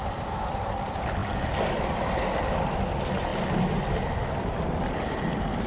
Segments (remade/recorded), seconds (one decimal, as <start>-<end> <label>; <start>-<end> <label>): 0.0-5.7 recorded